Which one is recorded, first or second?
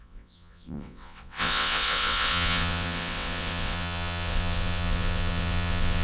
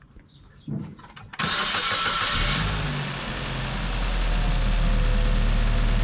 second